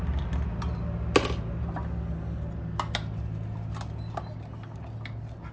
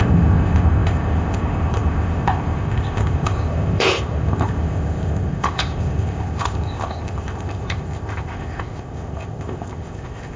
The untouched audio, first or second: first